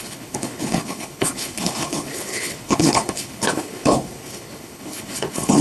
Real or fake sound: fake